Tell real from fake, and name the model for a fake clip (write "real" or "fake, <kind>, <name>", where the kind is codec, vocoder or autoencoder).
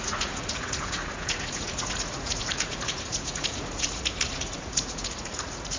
fake, vocoder, Vocos